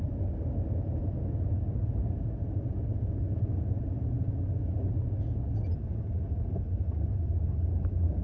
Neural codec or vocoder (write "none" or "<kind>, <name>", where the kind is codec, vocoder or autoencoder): none